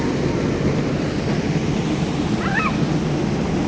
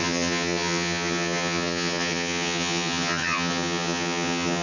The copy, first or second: second